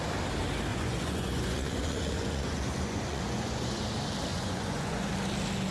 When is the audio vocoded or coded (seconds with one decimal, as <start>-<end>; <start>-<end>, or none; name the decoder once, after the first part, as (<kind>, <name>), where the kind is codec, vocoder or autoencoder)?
0.7-3.8 (vocoder, Vocos); 4.3-5.1